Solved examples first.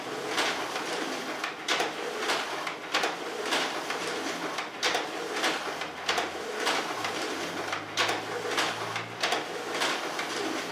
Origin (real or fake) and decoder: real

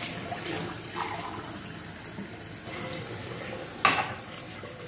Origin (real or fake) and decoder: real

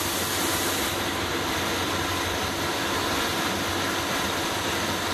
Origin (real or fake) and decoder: real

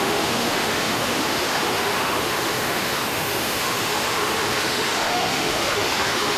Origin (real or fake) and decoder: fake, autoencoder, DAC-VAE